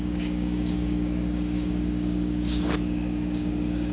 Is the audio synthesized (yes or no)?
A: yes